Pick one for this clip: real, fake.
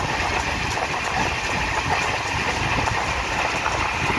real